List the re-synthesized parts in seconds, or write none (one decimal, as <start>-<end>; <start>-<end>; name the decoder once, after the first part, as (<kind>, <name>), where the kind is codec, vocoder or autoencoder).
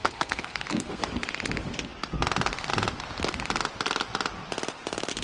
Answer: 0.0-1.0 (codec, SNAC)